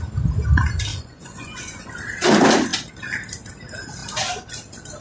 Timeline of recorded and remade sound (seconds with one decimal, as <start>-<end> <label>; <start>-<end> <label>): 0.0-0.9 recorded; 0.9-1.9 remade; 1.9-5.0 recorded